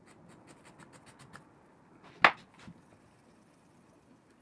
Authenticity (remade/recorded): recorded